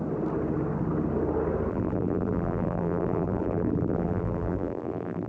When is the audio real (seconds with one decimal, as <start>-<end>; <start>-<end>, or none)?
0.0-1.7